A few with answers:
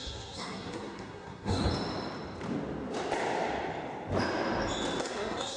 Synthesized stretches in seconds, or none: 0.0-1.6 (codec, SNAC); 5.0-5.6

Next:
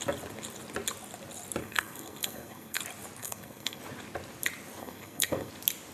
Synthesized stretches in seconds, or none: 1.6-2.8 (codec, SNAC); 3.2-3.8; 4.8-5.5

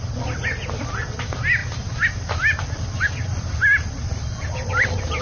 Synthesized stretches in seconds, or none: 0.0-5.2 (vocoder, BigVGAN v2)

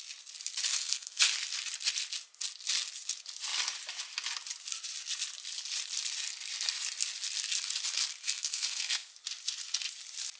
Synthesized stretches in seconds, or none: 0.7-1.2 (codec, SNAC); 8.2-9.1

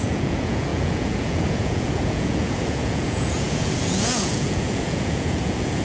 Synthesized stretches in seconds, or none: 0.0-5.8 (vocoder, Vocos)

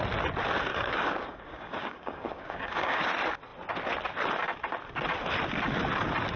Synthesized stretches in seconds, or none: 0.7-3.1 (codec, DAC)

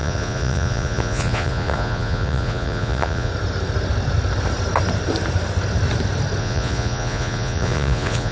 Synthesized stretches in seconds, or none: 0.0-3.3 (vocoder, Vocos); 6.4-8.3

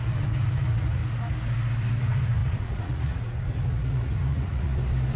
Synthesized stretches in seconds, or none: 0.0-1.0 (vocoder, Vocos); 2.0-4.7